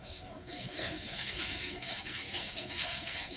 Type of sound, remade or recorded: remade